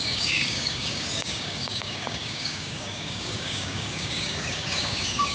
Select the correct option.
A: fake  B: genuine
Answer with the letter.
A